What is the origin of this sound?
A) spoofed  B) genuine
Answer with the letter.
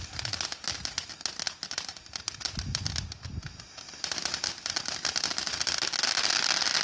B